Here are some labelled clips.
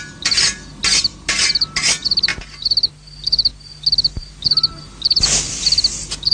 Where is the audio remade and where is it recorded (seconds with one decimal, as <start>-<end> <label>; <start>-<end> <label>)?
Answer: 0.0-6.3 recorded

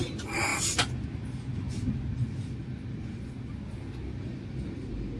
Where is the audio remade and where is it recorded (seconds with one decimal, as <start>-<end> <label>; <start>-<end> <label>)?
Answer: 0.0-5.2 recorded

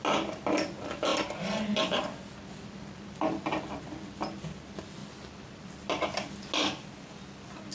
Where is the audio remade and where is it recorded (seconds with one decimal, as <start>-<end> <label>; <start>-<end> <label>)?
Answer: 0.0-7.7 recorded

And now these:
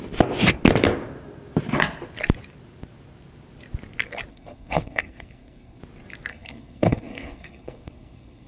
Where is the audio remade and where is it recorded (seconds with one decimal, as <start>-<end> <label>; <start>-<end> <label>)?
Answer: 0.0-4.3 recorded; 4.3-5.8 remade; 5.8-6.3 recorded; 6.3-8.5 remade

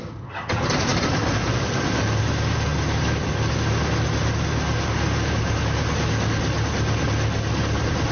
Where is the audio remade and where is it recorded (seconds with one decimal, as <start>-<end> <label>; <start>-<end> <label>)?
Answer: 0.0-8.1 recorded

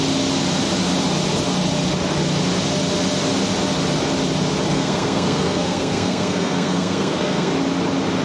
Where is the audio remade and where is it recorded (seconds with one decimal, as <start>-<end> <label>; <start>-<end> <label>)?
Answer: 0.0-4.7 recorded; 4.7-7.5 remade; 7.5-8.2 recorded

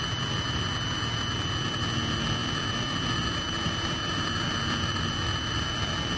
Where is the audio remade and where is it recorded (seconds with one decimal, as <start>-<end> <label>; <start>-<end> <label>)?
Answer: 0.0-6.2 recorded

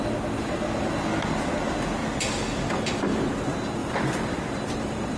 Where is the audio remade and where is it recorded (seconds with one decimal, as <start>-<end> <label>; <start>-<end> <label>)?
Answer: 0.0-2.0 recorded; 2.0-3.2 remade; 3.2-3.8 recorded; 3.8-5.2 remade